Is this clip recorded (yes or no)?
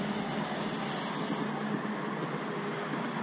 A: yes